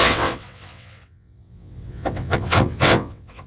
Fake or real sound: fake